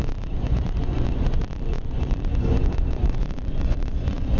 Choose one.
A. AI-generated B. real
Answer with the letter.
A